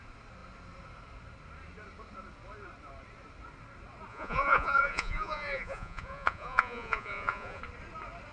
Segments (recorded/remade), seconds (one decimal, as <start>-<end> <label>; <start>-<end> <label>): 0.0-4.1 recorded; 4.1-7.6 remade; 7.6-8.3 recorded